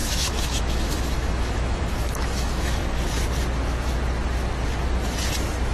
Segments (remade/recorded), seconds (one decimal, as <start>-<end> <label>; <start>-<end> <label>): 0.0-2.8 remade; 2.8-5.7 recorded